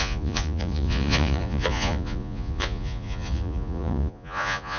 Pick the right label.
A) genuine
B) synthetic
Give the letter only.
B